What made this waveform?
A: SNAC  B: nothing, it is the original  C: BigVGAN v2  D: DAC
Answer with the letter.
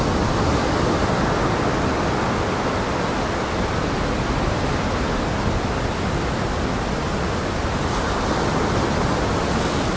B